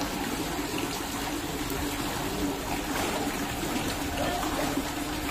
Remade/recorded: recorded